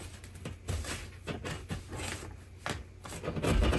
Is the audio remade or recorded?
recorded